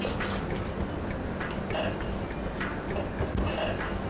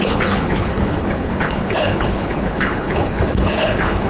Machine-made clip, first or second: second